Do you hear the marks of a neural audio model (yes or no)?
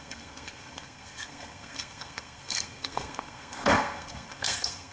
yes